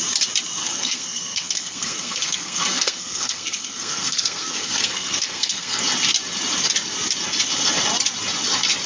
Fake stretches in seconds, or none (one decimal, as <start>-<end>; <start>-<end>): 0.6-5.8